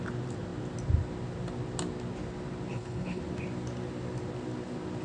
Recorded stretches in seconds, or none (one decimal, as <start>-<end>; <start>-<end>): 0.0-2.7; 3.2-5.0